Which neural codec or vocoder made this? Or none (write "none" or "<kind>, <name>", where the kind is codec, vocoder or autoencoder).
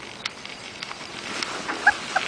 none